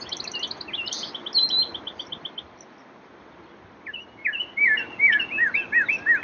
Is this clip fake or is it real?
real